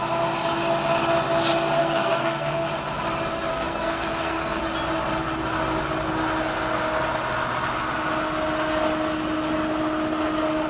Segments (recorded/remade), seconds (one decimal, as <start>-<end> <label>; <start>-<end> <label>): 0.0-1.8 recorded; 1.8-2.7 remade; 2.7-3.5 recorded; 3.5-4.6 remade; 4.6-10.7 recorded